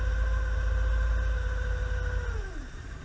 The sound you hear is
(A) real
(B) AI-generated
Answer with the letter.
A